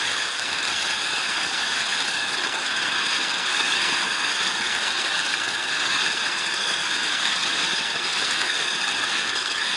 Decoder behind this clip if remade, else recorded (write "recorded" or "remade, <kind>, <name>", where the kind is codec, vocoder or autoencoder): remade, codec, SNAC